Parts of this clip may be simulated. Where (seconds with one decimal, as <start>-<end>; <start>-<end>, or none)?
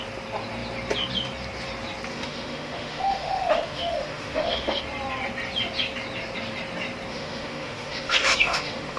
2.1-4.8; 7.1-9.0